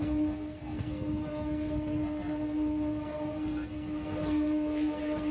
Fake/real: fake